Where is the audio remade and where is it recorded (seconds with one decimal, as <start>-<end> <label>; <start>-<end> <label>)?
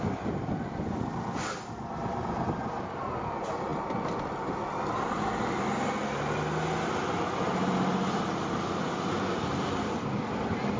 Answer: 0.0-10.8 recorded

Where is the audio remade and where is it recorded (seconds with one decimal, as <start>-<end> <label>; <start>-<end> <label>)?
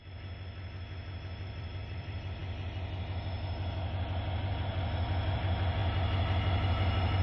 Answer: 0.0-1.4 recorded; 1.4-2.4 remade; 2.4-4.4 recorded; 4.4-5.8 remade; 5.8-7.2 recorded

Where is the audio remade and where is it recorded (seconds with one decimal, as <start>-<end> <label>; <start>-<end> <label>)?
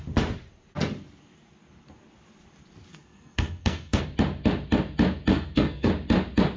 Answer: 0.0-2.9 recorded; 2.9-4.0 remade; 4.0-5.3 recorded; 5.3-5.9 remade; 5.9-6.6 recorded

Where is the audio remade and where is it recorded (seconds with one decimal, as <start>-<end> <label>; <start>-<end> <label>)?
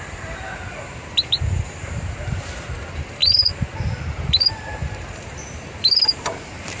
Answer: 0.0-6.8 remade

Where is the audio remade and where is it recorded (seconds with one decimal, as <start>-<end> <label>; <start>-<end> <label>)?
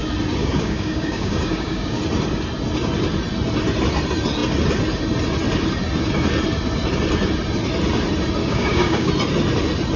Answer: 0.0-0.4 recorded; 0.4-2.0 remade; 2.0-8.4 recorded; 8.4-9.1 remade; 9.1-10.0 recorded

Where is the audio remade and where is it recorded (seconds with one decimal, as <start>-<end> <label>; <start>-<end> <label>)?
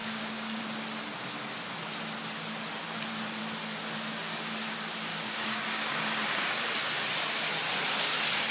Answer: 0.0-0.6 remade; 0.6-5.1 recorded; 5.1-6.5 remade; 6.5-8.5 recorded